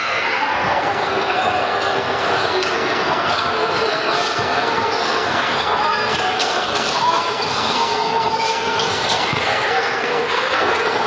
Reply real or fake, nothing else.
fake